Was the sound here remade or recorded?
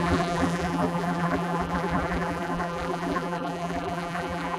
remade